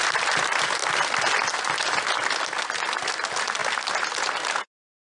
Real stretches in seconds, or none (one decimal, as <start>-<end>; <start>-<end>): 0.8-2.1; 3.6-5.1